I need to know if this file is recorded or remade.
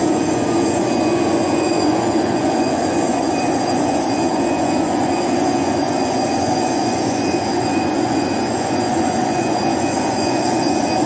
remade